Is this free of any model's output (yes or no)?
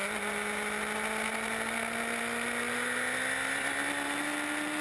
yes